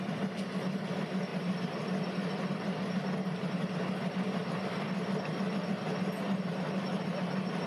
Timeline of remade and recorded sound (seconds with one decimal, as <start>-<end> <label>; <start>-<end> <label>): 0.0-7.7 recorded